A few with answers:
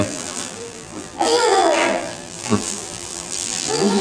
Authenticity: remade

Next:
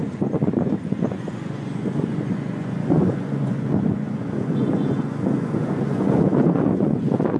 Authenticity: remade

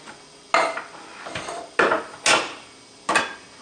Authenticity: recorded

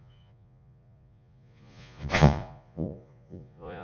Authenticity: remade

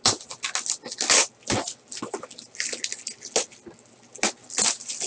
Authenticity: recorded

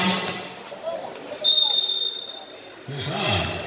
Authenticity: recorded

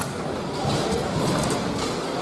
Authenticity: recorded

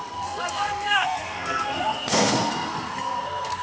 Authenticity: remade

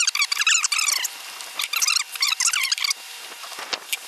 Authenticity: recorded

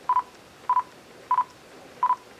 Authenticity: recorded